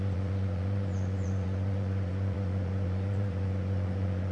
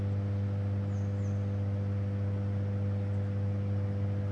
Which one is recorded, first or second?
second